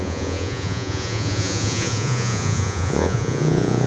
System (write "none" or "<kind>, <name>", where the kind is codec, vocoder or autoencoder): vocoder, Vocos